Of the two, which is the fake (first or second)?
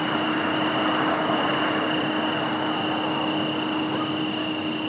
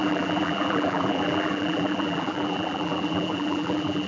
second